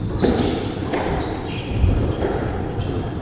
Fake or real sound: fake